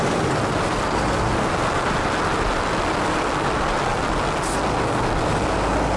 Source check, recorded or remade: recorded